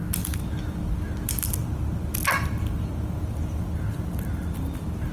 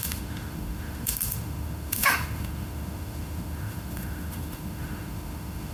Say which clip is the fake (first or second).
second